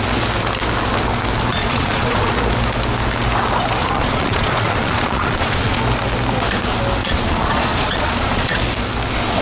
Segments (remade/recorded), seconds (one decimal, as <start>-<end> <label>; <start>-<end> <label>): 0.0-1.5 recorded; 1.5-2.3 remade; 2.3-3.8 recorded; 3.8-5.8 remade; 5.8-7.0 recorded; 7.0-8.6 remade; 8.6-9.4 recorded